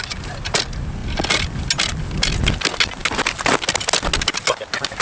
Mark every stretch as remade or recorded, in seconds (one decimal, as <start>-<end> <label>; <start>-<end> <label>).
0.0-5.0 recorded